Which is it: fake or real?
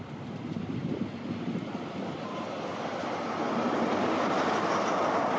fake